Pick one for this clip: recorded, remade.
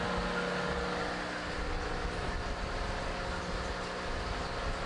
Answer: recorded